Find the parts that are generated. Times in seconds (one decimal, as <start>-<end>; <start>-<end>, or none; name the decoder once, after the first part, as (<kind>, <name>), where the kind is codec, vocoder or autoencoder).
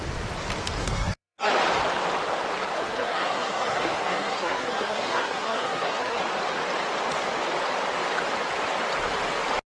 0.8-1.5 (codec, SNAC); 2.8-6.2